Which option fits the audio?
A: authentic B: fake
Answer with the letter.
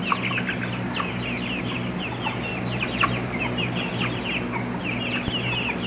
A